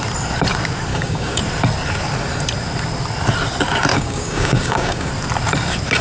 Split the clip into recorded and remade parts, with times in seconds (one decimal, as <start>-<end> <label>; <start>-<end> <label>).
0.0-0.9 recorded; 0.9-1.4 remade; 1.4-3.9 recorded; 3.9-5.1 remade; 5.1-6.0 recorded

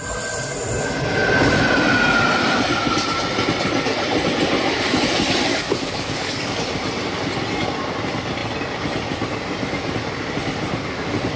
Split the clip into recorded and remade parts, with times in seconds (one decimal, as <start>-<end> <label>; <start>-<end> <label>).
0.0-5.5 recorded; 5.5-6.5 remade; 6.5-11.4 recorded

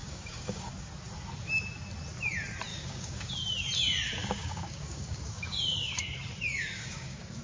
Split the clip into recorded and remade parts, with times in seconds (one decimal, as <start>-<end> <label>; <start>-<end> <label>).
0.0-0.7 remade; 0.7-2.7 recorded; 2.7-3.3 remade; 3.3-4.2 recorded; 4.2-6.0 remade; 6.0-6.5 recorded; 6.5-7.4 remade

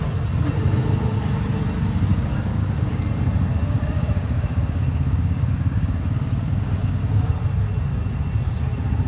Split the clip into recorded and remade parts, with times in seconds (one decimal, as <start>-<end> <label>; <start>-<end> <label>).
0.0-2.1 recorded; 2.1-3.0 remade; 3.0-3.5 recorded; 3.5-7.3 remade; 7.3-9.1 recorded

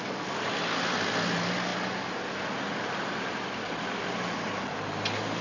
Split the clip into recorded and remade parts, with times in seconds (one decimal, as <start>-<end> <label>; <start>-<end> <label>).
0.0-5.4 recorded

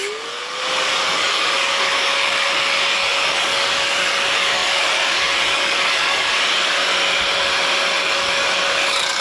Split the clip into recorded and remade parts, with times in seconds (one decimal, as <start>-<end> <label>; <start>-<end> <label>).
0.0-6.3 remade; 6.3-8.0 recorded; 8.0-9.2 remade

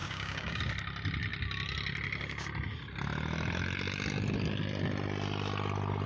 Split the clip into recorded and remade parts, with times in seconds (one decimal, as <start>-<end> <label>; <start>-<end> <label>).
0.0-0.6 remade; 0.6-6.1 recorded